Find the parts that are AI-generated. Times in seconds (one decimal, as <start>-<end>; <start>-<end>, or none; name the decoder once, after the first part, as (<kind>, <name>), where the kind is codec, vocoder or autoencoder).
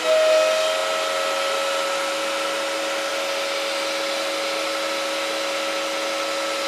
none